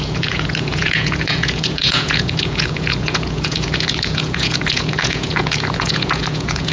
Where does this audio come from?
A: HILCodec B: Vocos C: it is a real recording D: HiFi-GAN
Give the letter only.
B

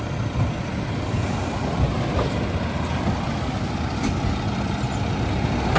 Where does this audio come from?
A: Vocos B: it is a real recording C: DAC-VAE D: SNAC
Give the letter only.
B